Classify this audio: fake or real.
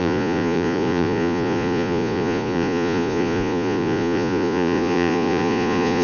fake